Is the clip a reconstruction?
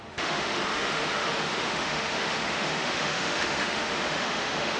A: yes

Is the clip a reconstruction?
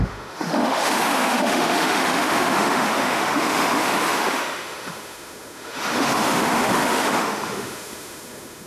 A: yes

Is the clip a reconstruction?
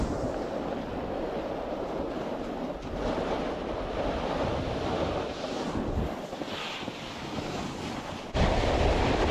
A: no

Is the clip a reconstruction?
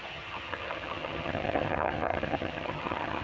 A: yes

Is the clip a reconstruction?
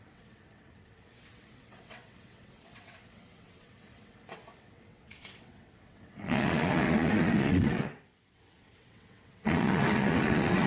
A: yes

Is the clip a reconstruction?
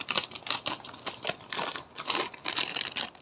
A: no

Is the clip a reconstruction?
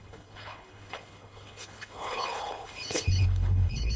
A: yes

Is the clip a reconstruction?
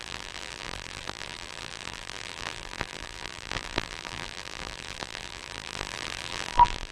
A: yes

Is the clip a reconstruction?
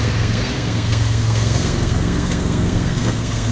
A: yes